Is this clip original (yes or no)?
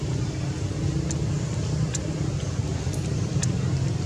yes